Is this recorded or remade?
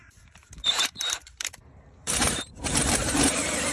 remade